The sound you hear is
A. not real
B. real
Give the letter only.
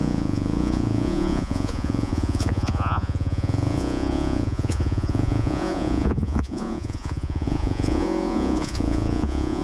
A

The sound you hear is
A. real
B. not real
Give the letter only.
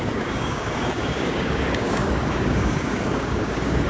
B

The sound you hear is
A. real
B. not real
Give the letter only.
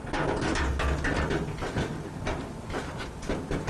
A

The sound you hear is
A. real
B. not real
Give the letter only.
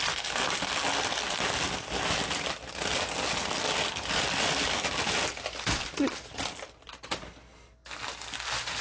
A